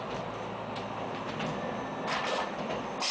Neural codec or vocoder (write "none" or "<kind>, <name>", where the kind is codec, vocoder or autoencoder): none